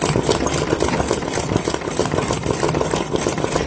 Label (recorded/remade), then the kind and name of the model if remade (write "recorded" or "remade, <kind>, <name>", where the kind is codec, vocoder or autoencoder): recorded